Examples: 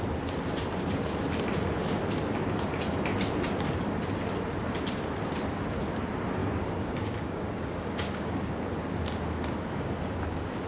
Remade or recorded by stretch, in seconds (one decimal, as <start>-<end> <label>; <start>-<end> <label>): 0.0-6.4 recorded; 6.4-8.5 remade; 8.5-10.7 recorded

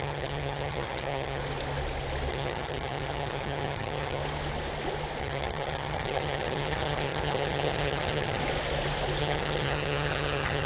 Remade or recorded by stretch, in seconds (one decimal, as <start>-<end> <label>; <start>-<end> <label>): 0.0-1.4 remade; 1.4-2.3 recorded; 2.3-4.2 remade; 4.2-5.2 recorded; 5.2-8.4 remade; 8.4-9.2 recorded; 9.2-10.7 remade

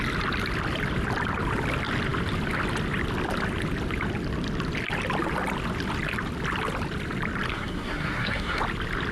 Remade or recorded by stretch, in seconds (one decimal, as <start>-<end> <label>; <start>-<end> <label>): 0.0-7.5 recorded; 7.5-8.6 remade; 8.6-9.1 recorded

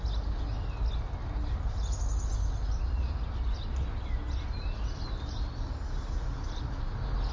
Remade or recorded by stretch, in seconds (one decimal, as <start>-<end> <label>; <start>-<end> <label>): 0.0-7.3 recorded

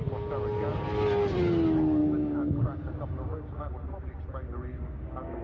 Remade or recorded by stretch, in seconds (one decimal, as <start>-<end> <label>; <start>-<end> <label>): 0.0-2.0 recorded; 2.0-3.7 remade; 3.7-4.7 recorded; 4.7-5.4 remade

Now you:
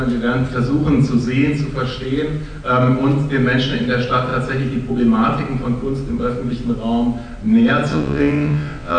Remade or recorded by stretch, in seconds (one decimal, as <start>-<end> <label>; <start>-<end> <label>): 0.0-7.9 recorded; 7.9-9.0 remade

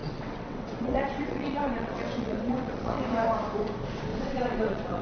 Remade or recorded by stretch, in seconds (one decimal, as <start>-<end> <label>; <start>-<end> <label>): 0.0-3.0 remade; 3.0-4.1 recorded; 4.1-5.0 remade